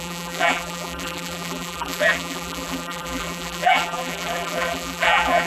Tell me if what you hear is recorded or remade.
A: remade